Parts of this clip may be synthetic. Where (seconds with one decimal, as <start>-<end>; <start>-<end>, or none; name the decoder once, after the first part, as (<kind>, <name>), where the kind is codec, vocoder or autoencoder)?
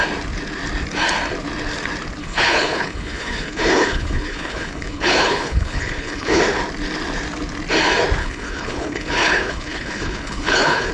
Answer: 2.2-6.4 (codec, HILCodec); 8.2-10.9